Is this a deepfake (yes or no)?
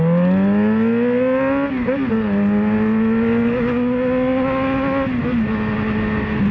no